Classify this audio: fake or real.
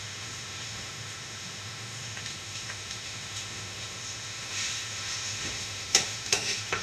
fake